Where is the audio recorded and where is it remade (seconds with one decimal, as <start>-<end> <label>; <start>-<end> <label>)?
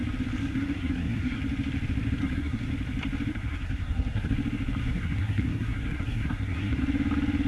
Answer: 0.0-0.4 recorded; 0.4-1.4 remade; 1.4-2.2 recorded; 2.2-2.7 remade; 2.7-3.3 recorded; 3.3-4.3 remade; 4.3-4.8 recorded; 4.8-6.8 remade; 6.8-7.5 recorded